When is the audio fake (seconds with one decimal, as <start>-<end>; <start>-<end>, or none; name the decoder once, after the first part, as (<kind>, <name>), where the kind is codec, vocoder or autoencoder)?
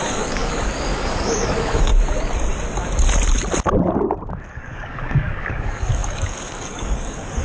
0.0-1.9 (codec, DAC); 4.5-7.4